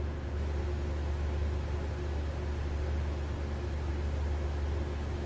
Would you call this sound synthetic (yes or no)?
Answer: no